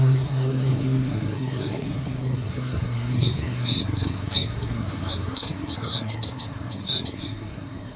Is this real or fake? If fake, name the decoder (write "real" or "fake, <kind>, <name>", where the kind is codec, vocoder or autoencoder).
fake, codec, SNAC